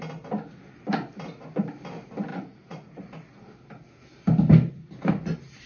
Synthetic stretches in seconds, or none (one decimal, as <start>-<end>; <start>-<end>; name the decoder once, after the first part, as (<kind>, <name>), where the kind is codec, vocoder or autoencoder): 2.3-3.0 (vocoder, Vocos)